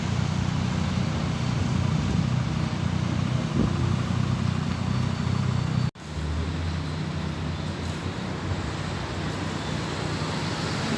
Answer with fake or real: real